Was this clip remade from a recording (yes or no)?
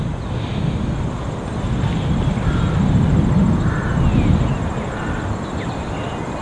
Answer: no